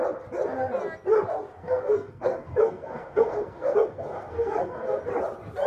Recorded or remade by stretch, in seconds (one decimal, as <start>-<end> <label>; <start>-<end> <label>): 0.0-1.6 recorded; 1.6-5.0 remade; 5.0-5.7 recorded